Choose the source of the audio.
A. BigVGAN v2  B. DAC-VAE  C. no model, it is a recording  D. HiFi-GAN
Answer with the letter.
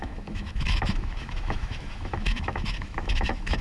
B